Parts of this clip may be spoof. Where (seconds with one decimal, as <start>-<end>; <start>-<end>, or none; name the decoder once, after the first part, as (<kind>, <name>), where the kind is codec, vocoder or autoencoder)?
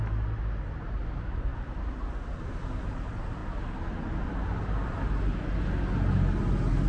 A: none